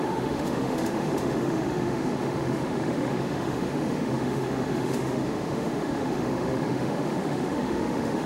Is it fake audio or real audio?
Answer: fake